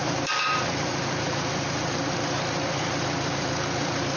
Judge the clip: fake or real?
fake